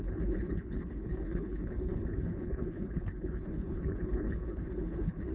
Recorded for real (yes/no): no